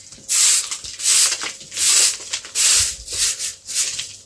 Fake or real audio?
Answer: real